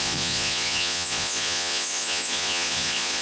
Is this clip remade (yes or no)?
yes